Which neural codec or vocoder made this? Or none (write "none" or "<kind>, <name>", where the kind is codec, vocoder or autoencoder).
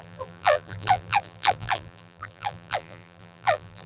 vocoder, BigVGAN v2